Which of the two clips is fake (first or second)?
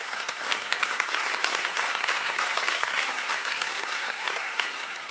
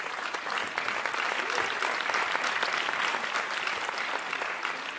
first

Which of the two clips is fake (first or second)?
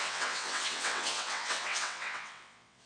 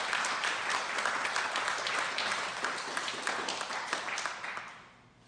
first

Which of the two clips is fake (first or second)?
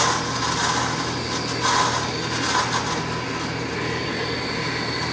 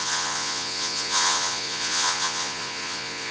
second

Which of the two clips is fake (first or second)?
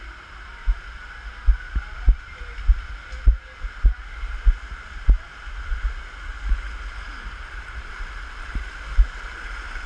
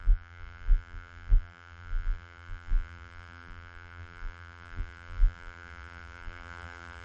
second